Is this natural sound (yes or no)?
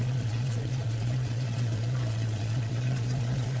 no